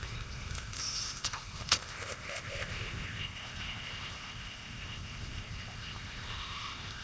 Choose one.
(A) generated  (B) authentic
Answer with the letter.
A